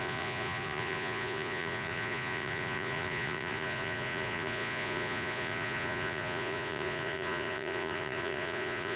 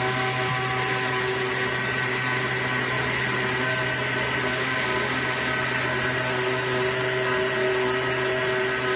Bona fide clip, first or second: second